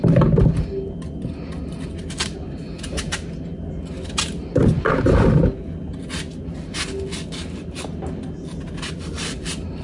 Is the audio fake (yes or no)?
no